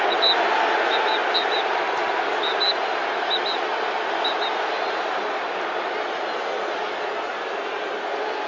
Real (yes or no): yes